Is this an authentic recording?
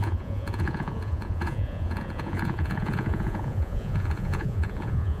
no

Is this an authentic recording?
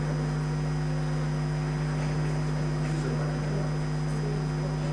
yes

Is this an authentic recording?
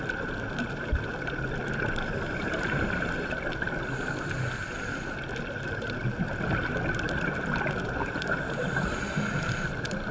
yes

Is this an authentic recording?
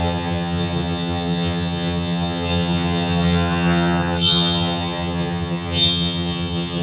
no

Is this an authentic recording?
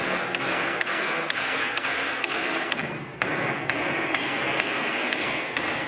no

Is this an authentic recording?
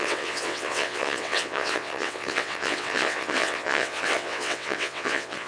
no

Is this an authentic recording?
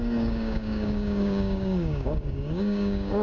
no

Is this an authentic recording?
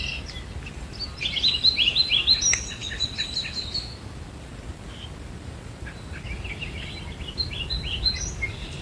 yes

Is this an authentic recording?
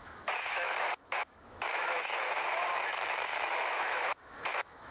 no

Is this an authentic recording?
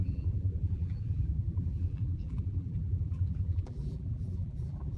no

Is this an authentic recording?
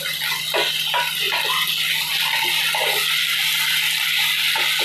yes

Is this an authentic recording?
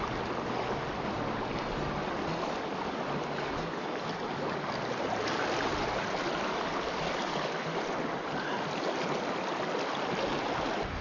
yes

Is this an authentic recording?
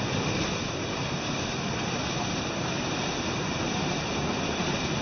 yes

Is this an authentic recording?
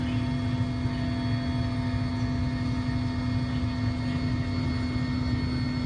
yes